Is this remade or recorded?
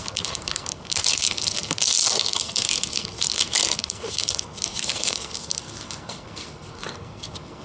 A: remade